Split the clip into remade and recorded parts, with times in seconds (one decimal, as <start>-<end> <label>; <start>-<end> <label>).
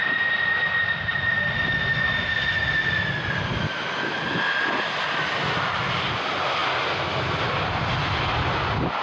0.0-9.0 recorded